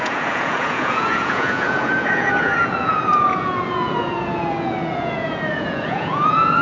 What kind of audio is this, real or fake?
fake